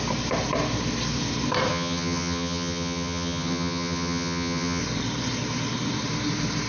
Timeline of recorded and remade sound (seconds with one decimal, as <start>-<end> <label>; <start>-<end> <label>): 0.0-1.7 recorded; 1.7-4.8 remade; 4.8-6.7 recorded